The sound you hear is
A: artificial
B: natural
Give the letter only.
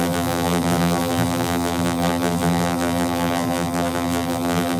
A